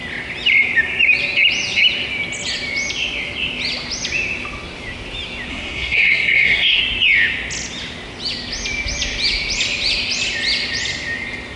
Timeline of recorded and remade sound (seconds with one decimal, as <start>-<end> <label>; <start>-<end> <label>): 0.0-5.5 recorded; 5.5-6.8 remade; 6.8-11.6 recorded